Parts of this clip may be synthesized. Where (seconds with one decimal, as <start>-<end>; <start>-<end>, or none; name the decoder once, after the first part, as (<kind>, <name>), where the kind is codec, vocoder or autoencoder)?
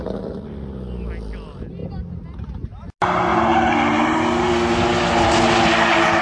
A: 3.3-4.5 (vocoder, BigVGAN v2)